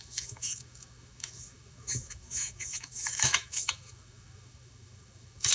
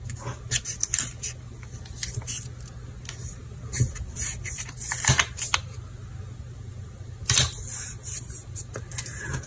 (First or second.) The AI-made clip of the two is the first